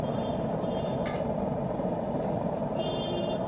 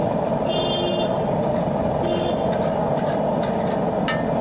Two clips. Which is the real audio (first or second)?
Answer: second